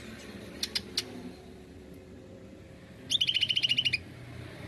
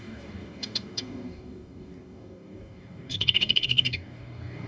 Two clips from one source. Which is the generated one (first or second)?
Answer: second